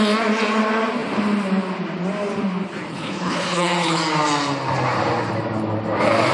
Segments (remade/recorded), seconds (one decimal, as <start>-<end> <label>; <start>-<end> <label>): 0.0-2.9 recorded; 2.9-4.0 remade; 4.0-6.3 recorded